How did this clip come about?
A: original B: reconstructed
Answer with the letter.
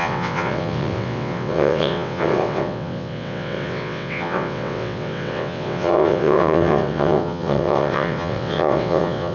B